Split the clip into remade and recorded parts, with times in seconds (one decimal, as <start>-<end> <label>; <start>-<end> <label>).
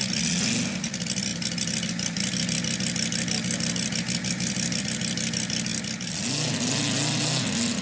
0.0-7.8 recorded